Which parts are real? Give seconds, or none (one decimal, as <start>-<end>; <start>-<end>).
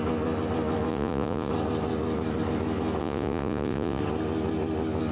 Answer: 0.0-0.9; 1.5-3.0; 4.0-5.1